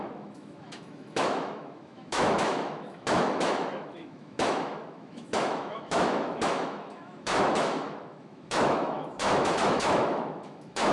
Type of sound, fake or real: fake